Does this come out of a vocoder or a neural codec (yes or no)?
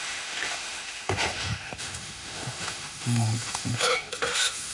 yes